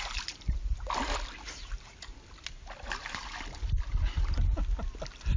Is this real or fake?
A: real